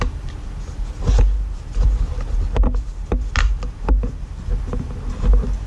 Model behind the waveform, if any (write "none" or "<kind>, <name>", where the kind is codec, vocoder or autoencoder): none